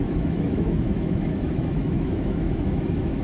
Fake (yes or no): yes